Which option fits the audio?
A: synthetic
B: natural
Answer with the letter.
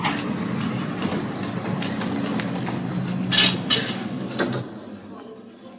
B